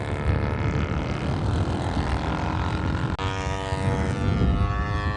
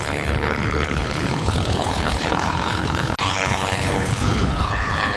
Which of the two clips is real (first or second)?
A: first